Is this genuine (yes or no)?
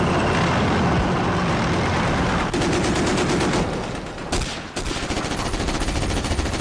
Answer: yes